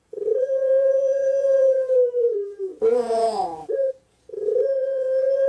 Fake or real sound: fake